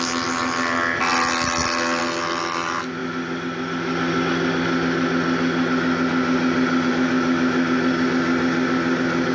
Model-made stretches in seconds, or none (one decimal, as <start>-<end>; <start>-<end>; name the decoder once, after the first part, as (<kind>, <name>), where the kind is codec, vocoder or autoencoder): none